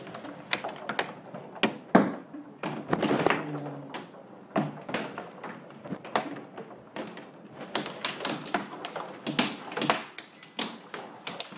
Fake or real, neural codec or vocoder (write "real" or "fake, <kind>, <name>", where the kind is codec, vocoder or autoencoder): real